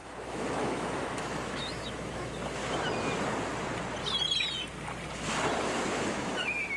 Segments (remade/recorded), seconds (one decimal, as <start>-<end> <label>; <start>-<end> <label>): 0.0-2.6 remade; 2.6-6.1 recorded; 6.1-6.8 remade